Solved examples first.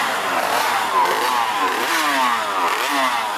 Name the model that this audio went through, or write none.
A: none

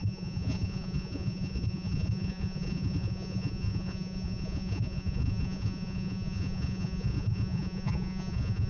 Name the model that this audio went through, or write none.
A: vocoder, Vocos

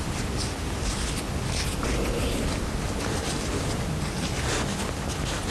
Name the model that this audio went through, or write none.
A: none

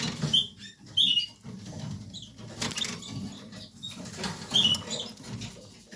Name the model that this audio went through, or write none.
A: none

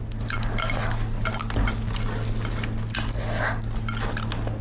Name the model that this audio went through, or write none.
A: none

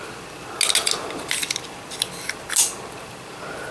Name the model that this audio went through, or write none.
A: none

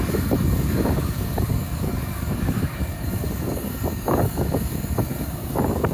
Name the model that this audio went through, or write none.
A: codec, DAC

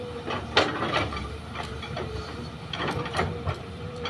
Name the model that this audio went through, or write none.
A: vocoder, BigVGAN v2